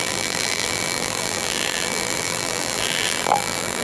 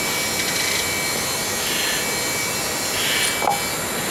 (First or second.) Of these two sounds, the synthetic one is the first